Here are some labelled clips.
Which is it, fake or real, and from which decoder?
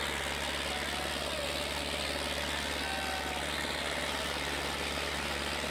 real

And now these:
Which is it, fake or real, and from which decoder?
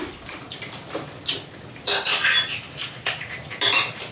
fake, vocoder, BigVGAN v2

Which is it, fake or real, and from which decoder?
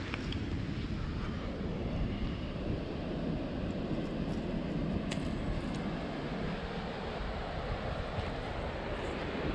real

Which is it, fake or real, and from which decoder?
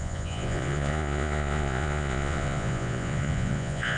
fake, vocoder, Vocos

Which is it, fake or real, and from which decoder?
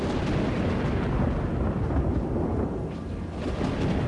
real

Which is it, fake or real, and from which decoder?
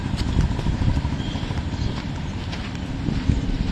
fake, vocoder, BigVGAN v2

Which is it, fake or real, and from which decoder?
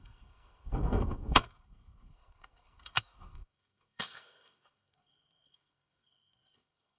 fake, codec, SNAC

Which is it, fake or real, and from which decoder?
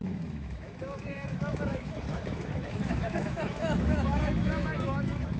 fake, autoencoder, DAC-VAE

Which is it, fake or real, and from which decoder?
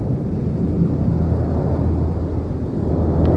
real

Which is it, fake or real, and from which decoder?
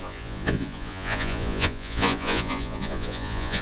fake, vocoder, Vocos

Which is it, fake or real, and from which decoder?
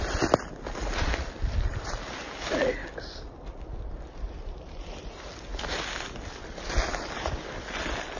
real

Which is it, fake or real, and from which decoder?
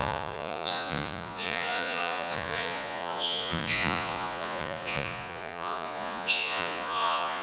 fake, vocoder, Vocos